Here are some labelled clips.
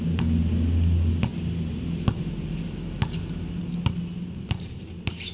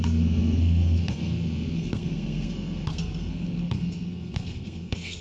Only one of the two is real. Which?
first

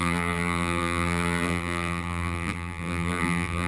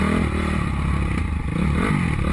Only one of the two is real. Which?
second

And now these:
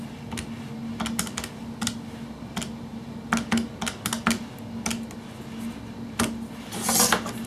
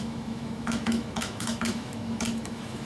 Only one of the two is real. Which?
first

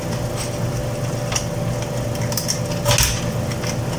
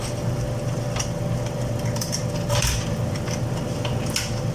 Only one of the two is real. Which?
first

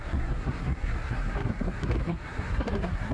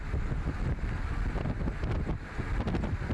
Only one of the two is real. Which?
second